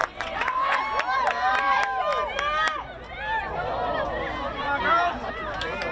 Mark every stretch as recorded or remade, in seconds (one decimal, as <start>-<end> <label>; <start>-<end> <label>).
0.0-0.8 remade; 0.8-5.9 recorded